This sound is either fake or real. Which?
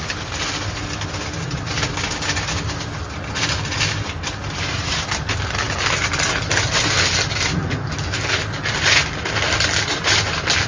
real